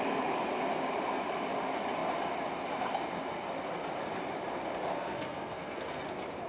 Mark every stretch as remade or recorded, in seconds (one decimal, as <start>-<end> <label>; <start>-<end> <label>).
0.0-4.9 recorded; 4.9-6.0 remade; 6.0-6.5 recorded